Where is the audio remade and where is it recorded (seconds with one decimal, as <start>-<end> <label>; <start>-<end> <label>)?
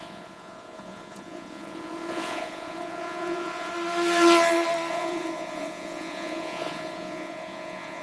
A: 0.0-3.7 remade; 3.7-4.9 recorded; 4.9-8.0 remade